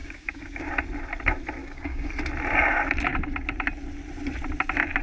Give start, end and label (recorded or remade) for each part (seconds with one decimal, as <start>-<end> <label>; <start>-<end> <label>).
0.0-0.7 remade; 0.7-1.6 recorded; 1.6-2.1 remade; 2.1-5.0 recorded